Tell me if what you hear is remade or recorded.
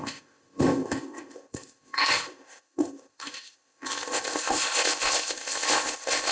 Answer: remade